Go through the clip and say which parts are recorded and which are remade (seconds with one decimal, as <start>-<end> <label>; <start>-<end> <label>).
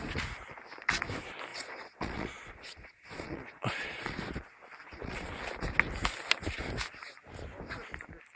0.0-1.5 recorded; 1.5-4.2 remade; 4.2-4.8 recorded; 4.8-5.3 remade; 5.3-8.4 recorded